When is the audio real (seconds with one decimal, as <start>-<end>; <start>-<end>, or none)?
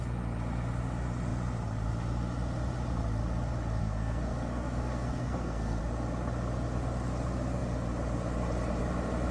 0.0-3.8; 5.8-9.3